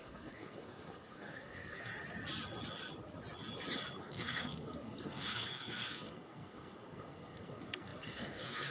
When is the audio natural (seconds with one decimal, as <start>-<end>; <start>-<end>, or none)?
1.9-4.0